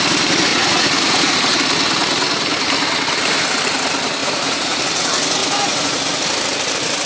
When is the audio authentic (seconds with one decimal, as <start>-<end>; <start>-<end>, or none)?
0.0-0.5; 1.6-4.2; 4.8-5.4; 6.0-7.1